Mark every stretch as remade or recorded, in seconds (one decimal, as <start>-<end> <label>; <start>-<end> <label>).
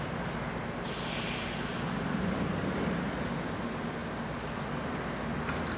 0.0-1.7 recorded; 1.7-2.5 remade; 2.5-5.8 recorded